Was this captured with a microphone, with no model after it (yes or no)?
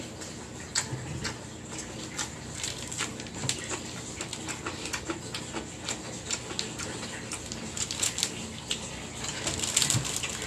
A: yes